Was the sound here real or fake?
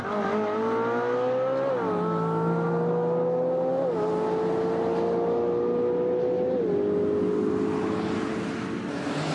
real